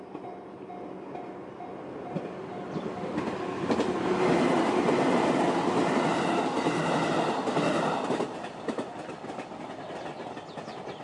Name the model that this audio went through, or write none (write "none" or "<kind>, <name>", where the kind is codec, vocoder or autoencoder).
none